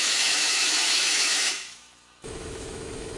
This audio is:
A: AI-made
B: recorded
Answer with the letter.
A